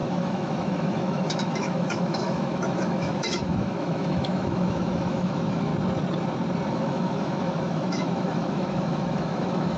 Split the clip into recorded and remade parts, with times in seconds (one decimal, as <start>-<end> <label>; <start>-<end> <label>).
0.0-5.7 remade; 5.7-6.7 recorded; 6.7-9.8 remade